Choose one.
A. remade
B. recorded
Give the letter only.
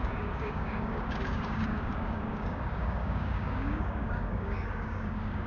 A